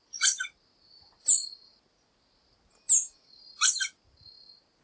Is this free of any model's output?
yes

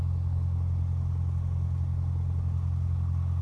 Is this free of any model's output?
yes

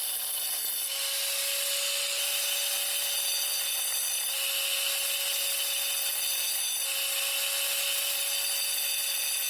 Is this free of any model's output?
yes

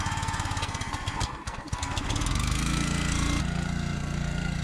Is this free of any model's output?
no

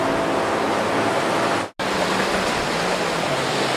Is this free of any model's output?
yes